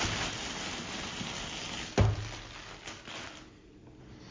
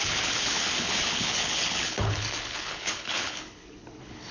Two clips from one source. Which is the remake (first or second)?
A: second